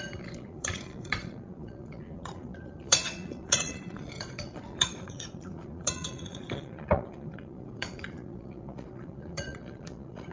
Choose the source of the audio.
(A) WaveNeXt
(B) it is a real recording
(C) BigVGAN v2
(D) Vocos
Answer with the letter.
D